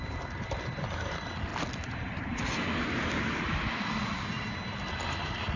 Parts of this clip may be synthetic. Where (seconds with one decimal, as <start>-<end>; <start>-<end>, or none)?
none